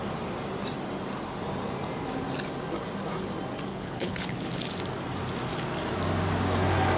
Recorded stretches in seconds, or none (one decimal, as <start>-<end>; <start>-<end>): 0.0-3.7; 4.7-7.0